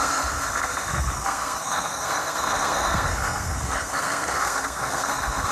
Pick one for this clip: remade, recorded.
remade